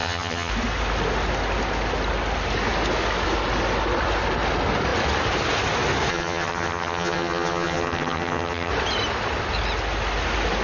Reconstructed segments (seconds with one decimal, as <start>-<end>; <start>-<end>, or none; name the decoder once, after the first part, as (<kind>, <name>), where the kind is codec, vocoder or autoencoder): 0.0-0.5 (vocoder, HiFi-GAN); 6.1-8.7